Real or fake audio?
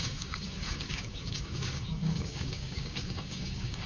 fake